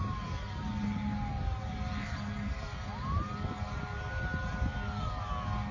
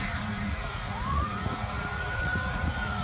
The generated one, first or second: second